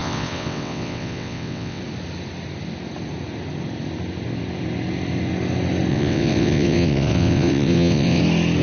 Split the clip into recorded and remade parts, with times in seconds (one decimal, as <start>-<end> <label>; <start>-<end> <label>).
0.0-1.8 remade; 1.8-5.9 recorded; 5.9-8.2 remade; 8.2-8.6 recorded